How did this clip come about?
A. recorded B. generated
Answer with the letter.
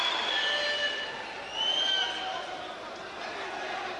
A